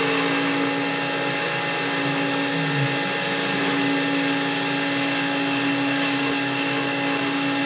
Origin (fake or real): real